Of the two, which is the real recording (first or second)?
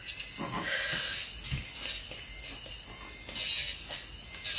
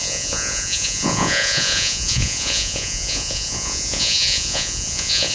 first